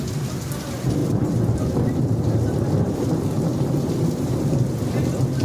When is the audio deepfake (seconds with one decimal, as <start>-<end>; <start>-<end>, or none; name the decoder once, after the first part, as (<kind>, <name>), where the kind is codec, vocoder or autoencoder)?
none